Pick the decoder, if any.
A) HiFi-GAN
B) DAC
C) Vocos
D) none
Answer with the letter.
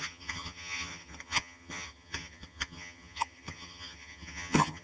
A